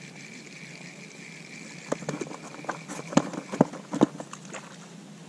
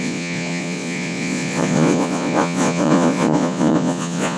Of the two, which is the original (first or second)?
first